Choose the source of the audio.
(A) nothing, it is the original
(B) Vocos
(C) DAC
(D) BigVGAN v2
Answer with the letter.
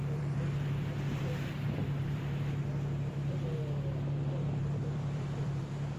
D